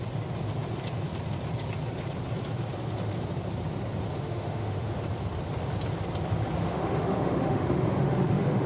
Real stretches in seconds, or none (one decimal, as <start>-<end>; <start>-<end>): 0.0-4.1; 5.0-6.6